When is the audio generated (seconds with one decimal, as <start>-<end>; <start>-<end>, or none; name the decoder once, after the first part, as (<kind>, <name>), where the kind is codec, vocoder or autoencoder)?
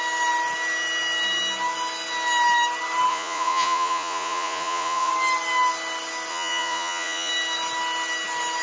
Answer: 3.1-5.1 (vocoder, Vocos); 6.3-7.3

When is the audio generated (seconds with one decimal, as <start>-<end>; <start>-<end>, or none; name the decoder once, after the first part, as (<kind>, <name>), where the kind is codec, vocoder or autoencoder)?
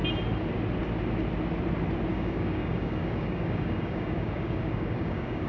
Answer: 2.1-5.5 (codec, DAC)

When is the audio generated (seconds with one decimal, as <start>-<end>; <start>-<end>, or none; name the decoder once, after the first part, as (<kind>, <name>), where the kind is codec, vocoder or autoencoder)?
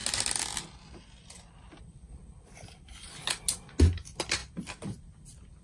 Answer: none